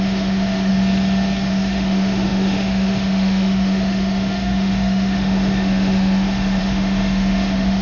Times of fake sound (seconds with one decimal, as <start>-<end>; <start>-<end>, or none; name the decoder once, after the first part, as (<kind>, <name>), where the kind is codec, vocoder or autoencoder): 0.0-0.7 (autoencoder, DAC-VAE); 1.5-7.8